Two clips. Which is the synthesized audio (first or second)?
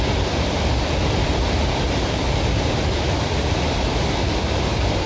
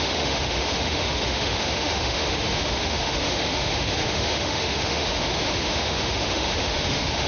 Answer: second